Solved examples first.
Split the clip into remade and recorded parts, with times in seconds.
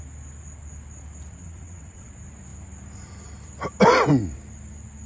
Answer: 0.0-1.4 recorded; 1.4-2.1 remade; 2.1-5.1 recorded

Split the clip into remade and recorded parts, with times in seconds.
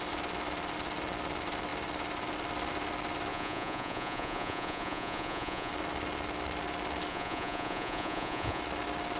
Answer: 0.0-3.3 recorded; 3.3-5.7 remade; 5.7-7.1 recorded; 7.1-8.6 remade; 8.6-9.2 recorded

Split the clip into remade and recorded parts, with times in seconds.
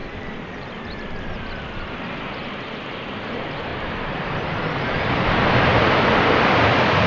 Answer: 0.0-2.2 remade; 2.2-3.7 recorded; 3.7-7.1 remade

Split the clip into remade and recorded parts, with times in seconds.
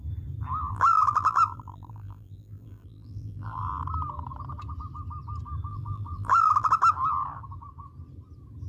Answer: 0.0-0.7 recorded; 0.7-3.7 remade; 3.7-5.7 recorded; 5.7-6.7 remade; 6.7-8.7 recorded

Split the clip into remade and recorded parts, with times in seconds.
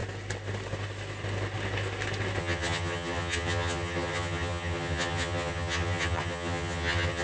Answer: 0.0-2.4 recorded; 2.4-7.2 remade